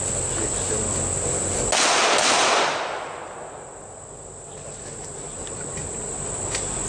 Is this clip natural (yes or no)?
yes